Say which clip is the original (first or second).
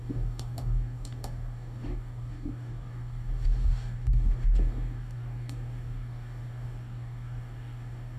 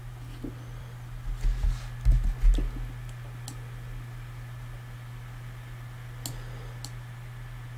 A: second